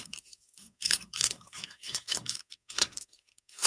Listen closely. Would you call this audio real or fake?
fake